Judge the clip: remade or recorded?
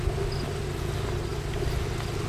recorded